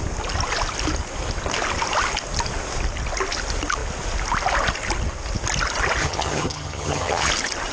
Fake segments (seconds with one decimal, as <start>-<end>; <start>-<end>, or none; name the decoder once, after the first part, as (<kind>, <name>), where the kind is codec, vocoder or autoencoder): 6.0-7.3 (vocoder, HiFi-GAN)

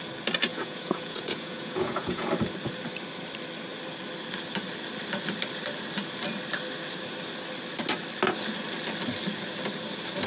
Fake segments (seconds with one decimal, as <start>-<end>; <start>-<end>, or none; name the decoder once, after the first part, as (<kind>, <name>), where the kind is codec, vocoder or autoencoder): 0.5-2.3 (vocoder, Vocos)

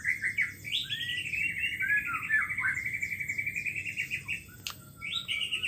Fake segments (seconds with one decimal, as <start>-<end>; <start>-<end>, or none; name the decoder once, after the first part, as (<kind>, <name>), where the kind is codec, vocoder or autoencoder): none

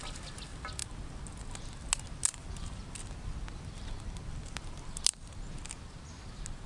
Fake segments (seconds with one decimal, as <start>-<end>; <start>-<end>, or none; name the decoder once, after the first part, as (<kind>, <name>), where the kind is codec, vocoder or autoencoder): none

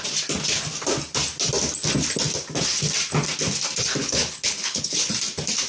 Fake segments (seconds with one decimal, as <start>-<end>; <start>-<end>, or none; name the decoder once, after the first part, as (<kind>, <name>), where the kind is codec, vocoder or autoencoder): 4.0-5.1 (codec, HILCodec)

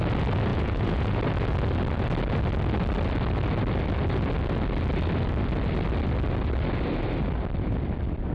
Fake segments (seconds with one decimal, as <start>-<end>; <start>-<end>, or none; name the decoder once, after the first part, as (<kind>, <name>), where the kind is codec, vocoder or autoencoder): 0.5-1.2 (vocoder, Vocos)